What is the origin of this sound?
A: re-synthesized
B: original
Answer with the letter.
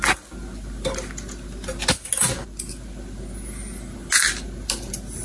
B